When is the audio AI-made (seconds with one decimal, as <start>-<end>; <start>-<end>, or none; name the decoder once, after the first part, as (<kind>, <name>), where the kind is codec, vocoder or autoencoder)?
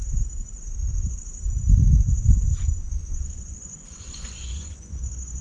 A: 2.5-5.4 (vocoder, Vocos)